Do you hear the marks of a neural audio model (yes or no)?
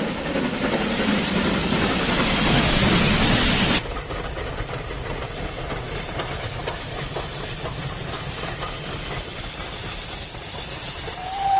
yes